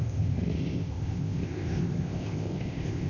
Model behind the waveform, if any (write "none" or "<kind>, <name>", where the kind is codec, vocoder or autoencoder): codec, ZipCodec